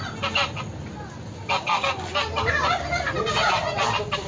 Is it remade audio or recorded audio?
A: recorded